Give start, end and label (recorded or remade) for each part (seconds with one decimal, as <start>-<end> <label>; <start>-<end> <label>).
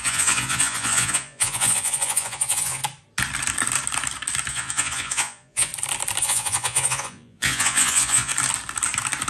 0.0-2.8 remade; 2.8-4.5 recorded; 4.5-5.7 remade; 5.7-6.2 recorded; 6.2-8.3 remade; 8.3-9.3 recorded